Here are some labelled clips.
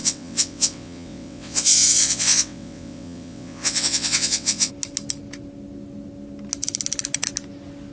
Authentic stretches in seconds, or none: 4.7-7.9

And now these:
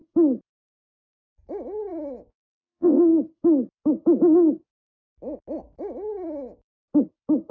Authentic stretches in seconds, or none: 0.0-2.3; 3.0-7.5

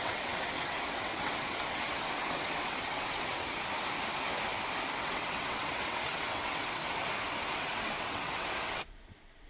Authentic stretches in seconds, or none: 3.6-5.0; 6.8-7.5

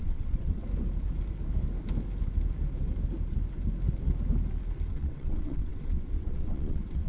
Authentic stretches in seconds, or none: 0.6-4.9

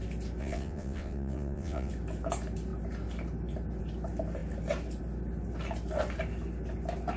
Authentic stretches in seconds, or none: 0.0-0.4; 1.9-7.2

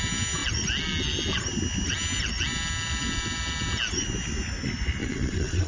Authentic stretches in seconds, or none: 0.0-5.0

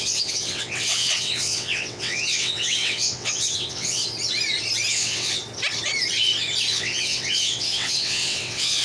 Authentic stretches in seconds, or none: 4.0-4.9; 5.4-6.7